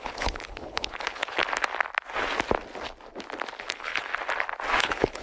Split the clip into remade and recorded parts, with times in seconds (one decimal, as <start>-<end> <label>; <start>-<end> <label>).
0.0-1.4 remade; 1.4-3.6 recorded; 3.6-4.1 remade; 4.1-4.8 recorded; 4.8-5.2 remade